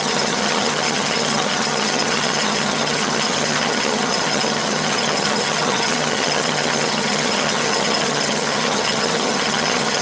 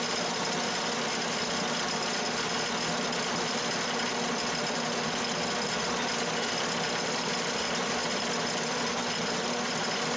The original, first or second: second